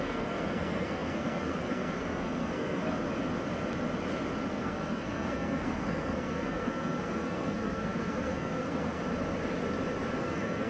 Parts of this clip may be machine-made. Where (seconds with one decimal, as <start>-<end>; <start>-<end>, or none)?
0.0-2.8; 4.5-9.0; 10.2-10.7